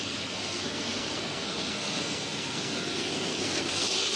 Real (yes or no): no